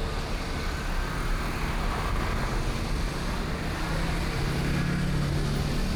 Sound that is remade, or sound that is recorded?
recorded